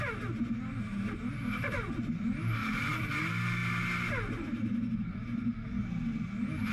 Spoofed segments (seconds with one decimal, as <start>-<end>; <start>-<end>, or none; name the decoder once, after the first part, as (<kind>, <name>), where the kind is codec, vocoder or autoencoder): 2.6-3.2 (vocoder, BigVGAN v2)